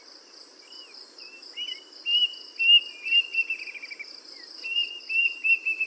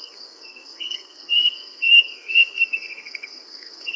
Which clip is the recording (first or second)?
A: first